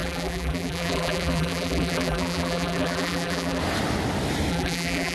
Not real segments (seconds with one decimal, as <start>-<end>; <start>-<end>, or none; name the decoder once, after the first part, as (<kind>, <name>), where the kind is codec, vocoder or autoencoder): 0.0-3.6 (vocoder, BigVGAN v2); 4.5-5.1